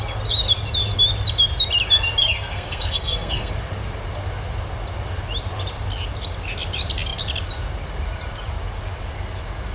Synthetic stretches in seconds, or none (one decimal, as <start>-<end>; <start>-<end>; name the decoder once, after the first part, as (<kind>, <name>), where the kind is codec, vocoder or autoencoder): 2.2-3.5 (codec, SNAC)